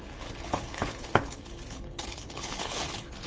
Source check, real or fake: fake